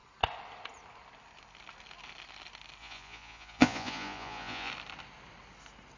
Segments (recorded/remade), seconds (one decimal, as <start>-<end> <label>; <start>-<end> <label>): 0.0-2.8 recorded; 2.8-4.7 remade; 4.7-6.0 recorded